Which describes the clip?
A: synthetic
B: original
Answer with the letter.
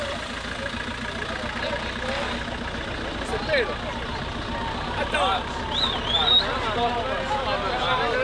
B